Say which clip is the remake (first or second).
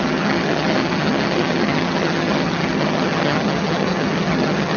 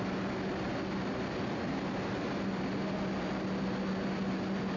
first